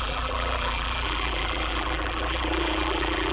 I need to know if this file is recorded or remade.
remade